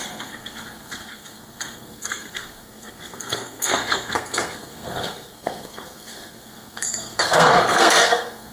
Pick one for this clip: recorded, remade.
remade